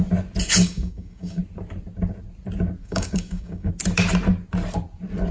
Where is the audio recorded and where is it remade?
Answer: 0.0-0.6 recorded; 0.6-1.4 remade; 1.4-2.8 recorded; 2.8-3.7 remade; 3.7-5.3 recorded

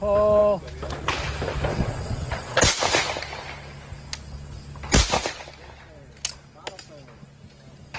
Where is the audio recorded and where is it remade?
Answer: 0.0-1.7 recorded; 1.7-2.6 remade; 2.6-8.0 recorded